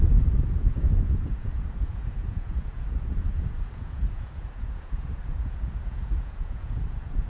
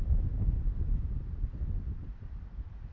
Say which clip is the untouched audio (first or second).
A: second